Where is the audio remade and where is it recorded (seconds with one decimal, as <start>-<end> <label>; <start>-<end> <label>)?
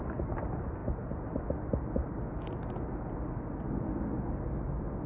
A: 0.0-5.1 recorded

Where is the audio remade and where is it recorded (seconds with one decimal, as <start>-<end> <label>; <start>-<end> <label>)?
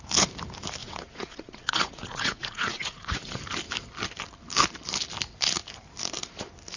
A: 0.0-0.8 recorded; 0.8-3.4 remade; 3.4-6.8 recorded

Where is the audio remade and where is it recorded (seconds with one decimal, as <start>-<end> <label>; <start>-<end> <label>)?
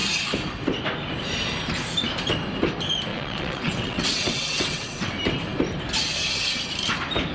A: 0.0-3.1 recorded; 3.1-5.1 remade; 5.1-7.3 recorded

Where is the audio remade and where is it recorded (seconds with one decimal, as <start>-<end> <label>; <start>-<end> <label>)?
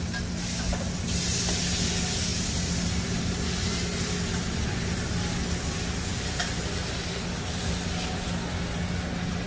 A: 0.0-9.5 recorded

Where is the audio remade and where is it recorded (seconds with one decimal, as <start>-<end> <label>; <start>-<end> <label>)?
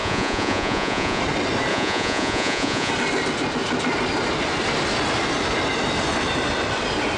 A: 0.0-1.2 remade; 1.2-1.7 recorded; 1.7-2.9 remade; 2.9-7.2 recorded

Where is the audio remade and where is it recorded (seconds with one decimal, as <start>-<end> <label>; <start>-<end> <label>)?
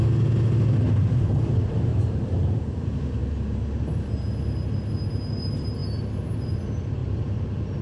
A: 0.0-1.9 recorded; 1.9-2.8 remade; 2.8-7.8 recorded